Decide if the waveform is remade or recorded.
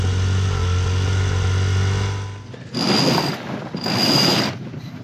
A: recorded